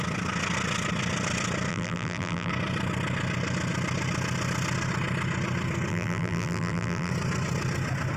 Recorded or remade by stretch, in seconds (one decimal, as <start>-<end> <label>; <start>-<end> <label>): 0.0-1.7 recorded; 1.7-2.5 remade; 2.5-5.9 recorded; 5.9-7.1 remade; 7.1-8.2 recorded